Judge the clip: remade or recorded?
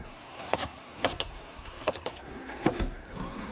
remade